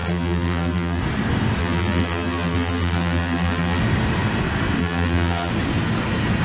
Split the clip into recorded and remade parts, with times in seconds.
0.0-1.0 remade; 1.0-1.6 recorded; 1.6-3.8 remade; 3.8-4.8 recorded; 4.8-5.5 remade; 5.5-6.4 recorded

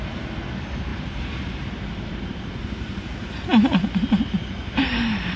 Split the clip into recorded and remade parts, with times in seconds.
0.0-0.9 recorded; 0.9-4.1 remade; 4.1-4.6 recorded; 4.6-5.4 remade